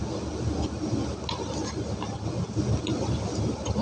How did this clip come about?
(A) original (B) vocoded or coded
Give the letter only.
A